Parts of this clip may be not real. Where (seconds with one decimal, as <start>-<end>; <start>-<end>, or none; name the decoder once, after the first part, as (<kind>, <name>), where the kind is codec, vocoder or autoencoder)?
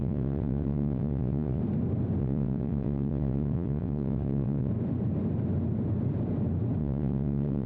0.0-1.6 (vocoder, WaveNeXt); 2.2-4.7; 6.8-7.7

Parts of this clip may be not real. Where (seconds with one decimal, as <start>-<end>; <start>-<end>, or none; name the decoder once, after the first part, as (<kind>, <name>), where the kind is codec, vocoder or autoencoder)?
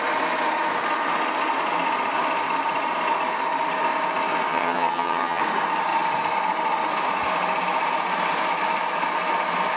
4.5-5.4 (vocoder, HiFi-GAN)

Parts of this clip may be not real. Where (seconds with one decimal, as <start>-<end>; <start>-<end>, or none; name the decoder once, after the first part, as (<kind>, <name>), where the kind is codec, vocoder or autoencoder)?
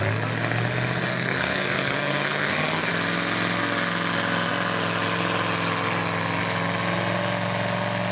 1.1-2.9 (codec, SNAC)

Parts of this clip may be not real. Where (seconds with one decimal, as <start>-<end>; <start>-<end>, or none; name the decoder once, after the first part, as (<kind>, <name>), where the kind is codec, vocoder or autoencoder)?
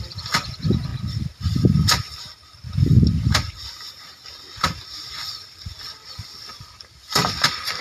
0.0-0.9 (vocoder, BigVGAN v2); 4.9-7.8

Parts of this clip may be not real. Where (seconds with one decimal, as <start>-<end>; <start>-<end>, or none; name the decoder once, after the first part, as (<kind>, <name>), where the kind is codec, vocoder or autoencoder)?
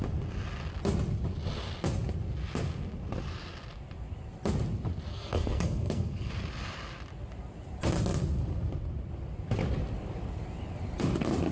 5.1-6.3 (codec, SNAC)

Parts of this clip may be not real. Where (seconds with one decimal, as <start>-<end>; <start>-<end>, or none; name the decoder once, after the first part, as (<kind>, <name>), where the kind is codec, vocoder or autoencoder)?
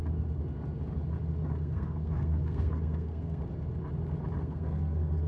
1.4-3.4 (codec, SNAC); 4.4-5.3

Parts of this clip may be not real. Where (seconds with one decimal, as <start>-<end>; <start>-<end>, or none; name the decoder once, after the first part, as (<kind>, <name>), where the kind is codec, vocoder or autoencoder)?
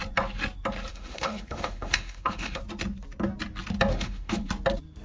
0.9-2.6 (autoencoder, DAC-VAE); 3.9-4.5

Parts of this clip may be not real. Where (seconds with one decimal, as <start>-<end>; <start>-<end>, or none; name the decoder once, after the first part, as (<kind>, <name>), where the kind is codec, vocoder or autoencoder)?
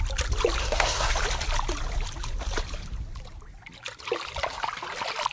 0.6-1.1 (codec, SNAC)